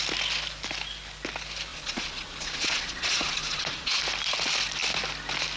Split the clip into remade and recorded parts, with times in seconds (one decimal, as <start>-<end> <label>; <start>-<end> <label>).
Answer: 0.0-1.7 recorded; 1.7-4.0 remade; 4.0-5.6 recorded